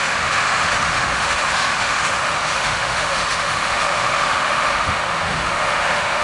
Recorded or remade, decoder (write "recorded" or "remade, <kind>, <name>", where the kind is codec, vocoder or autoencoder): remade, autoencoder, DAC-VAE